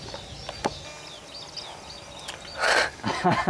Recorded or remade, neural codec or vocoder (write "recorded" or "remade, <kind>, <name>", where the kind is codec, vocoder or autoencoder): recorded